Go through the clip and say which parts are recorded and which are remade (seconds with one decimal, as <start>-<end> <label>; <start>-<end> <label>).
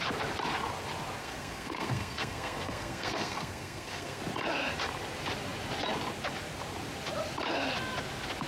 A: 0.0-1.2 recorded; 1.2-4.2 remade; 4.2-8.5 recorded